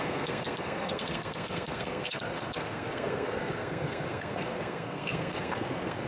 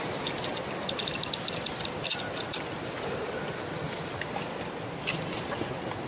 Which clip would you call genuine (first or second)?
second